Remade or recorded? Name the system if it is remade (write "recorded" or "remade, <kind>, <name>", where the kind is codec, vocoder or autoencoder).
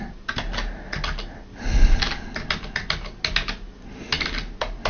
recorded